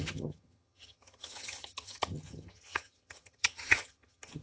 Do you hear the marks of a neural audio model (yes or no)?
yes